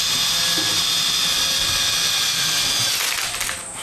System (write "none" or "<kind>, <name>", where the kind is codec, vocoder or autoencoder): none